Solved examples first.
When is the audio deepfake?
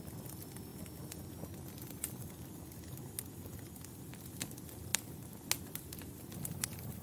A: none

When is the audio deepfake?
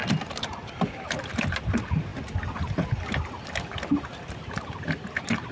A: none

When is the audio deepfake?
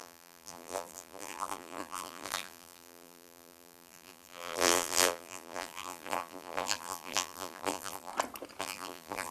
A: 0.0-8.1; 8.6-9.3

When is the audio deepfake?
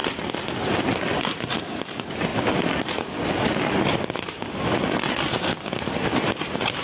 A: none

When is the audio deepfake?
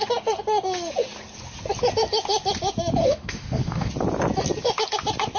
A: 3.0-3.9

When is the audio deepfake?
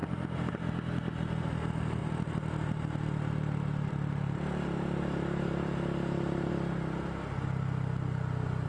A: 0.0-0.5; 2.0-6.5